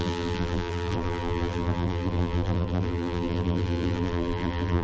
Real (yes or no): no